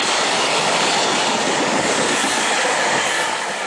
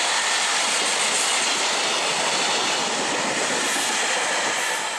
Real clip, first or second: second